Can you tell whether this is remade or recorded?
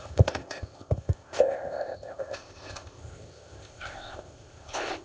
remade